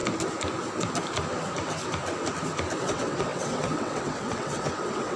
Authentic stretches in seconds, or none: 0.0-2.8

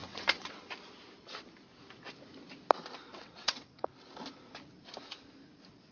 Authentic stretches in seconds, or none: 0.7-3.1; 3.9-5.9

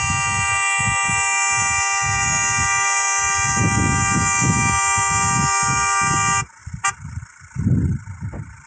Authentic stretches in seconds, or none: 0.0-8.7

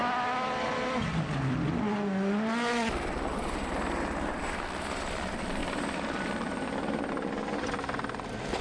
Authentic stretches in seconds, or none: 0.0-8.6

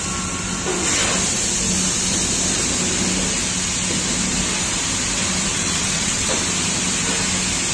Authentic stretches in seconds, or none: 0.0-5.5; 6.4-7.7

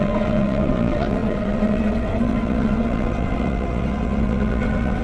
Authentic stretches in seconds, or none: none